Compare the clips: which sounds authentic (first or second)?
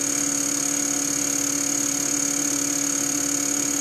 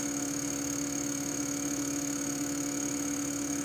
first